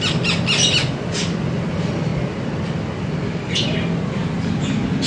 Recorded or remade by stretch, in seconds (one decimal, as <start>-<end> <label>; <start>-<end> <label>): 0.0-5.1 recorded